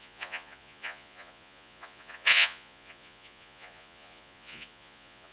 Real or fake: fake